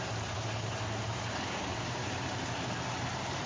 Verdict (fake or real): fake